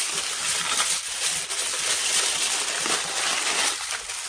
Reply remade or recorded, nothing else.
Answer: recorded